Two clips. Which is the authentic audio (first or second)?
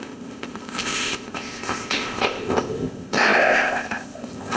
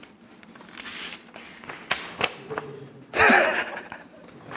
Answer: second